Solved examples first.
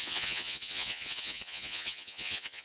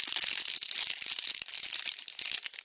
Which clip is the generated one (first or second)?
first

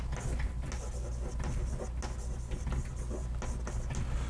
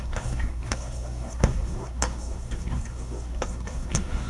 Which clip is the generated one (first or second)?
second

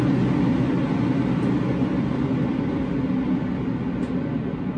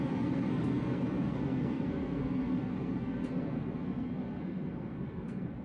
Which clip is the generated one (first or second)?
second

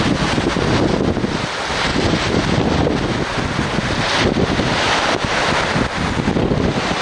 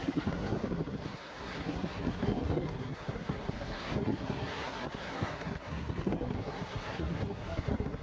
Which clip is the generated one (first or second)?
second